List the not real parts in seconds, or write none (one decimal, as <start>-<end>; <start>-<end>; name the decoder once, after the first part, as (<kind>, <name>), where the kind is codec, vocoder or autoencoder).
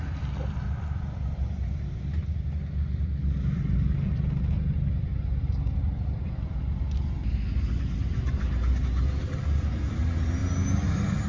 none